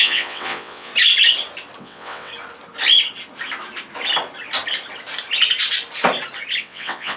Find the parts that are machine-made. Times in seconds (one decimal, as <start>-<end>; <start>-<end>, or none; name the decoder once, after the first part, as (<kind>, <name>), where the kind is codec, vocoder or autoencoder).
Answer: 0.0-0.9 (vocoder, WaveNeXt); 1.8-2.3; 6.6-7.2